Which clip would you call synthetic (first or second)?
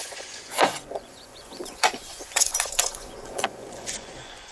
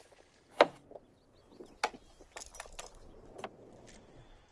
first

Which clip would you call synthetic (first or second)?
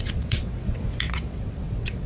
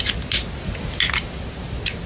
first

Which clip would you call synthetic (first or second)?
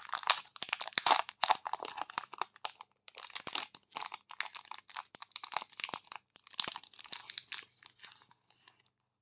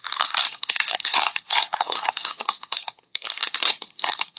second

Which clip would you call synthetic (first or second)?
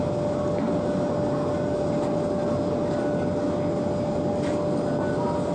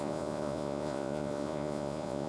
second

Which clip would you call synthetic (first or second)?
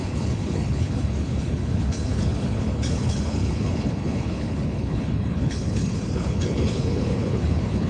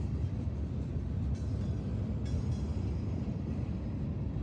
first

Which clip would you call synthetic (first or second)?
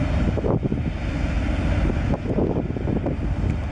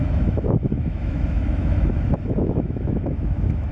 second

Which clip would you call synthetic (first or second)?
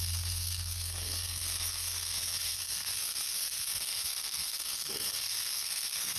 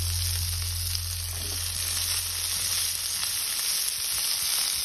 first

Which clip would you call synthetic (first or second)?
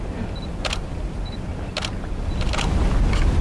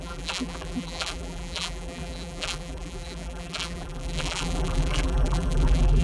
second